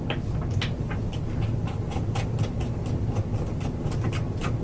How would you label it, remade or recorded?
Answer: recorded